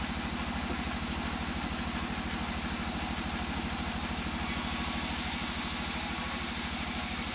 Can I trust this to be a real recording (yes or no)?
yes